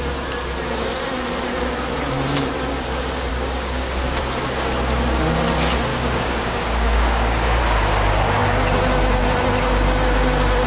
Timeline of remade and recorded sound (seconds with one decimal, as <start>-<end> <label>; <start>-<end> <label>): 0.0-3.3 recorded; 3.3-4.2 remade; 4.2-5.9 recorded; 5.9-7.6 remade; 7.6-10.7 recorded